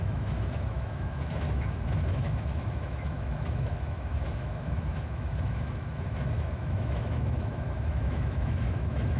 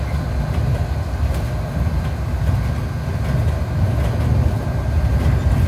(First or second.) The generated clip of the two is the first